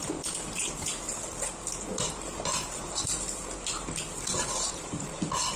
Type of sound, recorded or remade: recorded